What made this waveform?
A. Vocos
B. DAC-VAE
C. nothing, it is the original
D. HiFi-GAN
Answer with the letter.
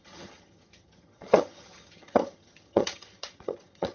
D